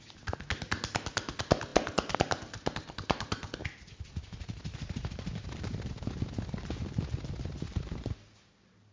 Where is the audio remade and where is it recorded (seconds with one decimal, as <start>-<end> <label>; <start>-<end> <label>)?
0.0-8.9 recorded